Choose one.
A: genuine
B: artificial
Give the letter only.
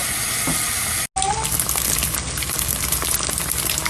A